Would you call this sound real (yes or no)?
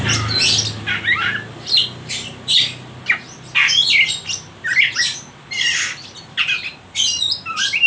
yes